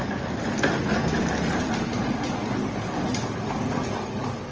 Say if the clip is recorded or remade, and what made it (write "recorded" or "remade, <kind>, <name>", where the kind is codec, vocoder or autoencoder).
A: recorded